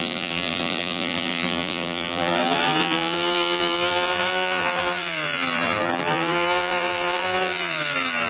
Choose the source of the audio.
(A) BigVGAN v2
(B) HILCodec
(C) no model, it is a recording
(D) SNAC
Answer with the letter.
A